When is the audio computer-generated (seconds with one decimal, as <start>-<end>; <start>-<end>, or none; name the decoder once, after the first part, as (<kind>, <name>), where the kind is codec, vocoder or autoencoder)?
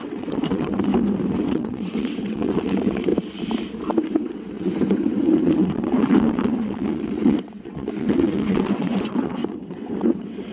0.0-0.9 (vocoder, WaveNeXt); 1.5-3.1; 4.0-10.5